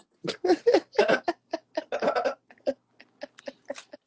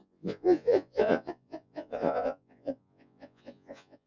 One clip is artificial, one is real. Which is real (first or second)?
first